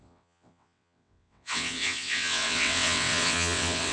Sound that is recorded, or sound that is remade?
remade